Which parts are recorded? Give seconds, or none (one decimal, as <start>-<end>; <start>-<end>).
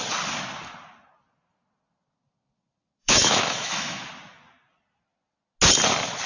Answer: 0.0-3.0; 4.1-6.3